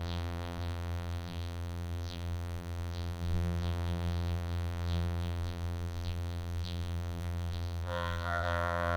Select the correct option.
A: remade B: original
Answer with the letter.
A